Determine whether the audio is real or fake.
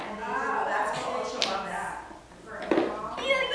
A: real